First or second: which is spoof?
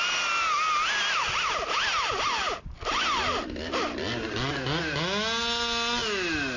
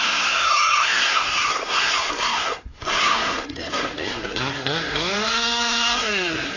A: second